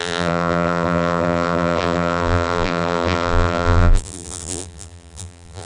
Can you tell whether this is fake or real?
fake